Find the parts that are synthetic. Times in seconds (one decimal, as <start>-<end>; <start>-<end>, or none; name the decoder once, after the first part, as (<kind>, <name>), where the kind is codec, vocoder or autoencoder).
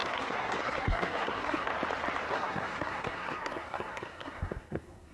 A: 0.0-1.7 (codec, SNAC); 2.3-5.1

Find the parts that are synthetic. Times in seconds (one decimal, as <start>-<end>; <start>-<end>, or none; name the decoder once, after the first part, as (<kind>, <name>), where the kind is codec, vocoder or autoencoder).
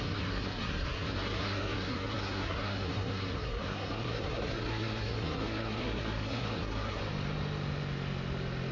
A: 0.0-7.0 (codec, SNAC)